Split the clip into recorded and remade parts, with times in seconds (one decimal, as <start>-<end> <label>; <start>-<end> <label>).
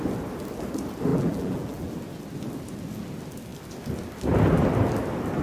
0.0-1.1 recorded; 1.1-1.9 remade; 1.9-5.4 recorded